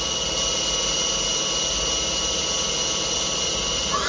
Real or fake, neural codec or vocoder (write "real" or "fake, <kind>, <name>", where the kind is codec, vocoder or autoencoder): real